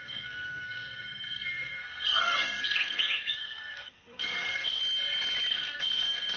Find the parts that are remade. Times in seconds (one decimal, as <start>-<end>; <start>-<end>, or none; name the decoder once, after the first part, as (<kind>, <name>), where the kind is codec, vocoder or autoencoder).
0.0-4.8 (codec, SNAC); 5.5-6.4